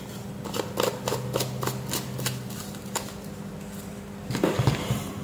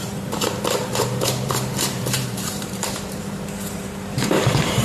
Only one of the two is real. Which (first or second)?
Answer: first